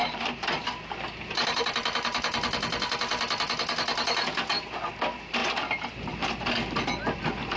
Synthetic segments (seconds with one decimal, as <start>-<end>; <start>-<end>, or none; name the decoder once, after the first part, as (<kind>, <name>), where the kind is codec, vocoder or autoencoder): 0.0-0.7 (vocoder, BigVGAN v2); 5.4-6.5